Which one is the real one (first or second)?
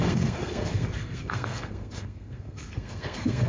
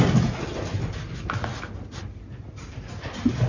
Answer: second